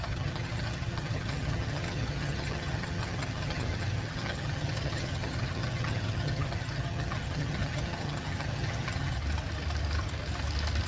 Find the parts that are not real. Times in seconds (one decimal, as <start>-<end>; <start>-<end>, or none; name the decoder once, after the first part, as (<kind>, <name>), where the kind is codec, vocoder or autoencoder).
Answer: 0.0-9.2 (vocoder, HiFi-GAN)